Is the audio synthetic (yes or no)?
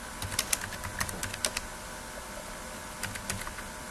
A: no